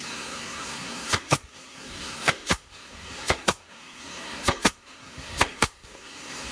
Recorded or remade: remade